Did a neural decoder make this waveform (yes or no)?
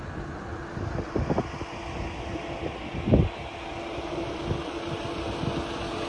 no